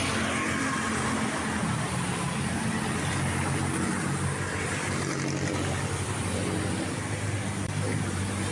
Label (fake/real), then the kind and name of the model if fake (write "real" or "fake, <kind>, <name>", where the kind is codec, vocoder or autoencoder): real